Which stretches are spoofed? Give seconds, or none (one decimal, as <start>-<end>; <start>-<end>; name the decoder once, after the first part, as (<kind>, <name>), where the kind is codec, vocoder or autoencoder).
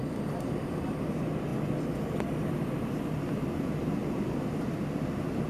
0.0-1.5 (vocoder, BigVGAN v2); 2.4-5.5